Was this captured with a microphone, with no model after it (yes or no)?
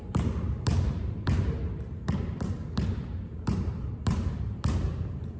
no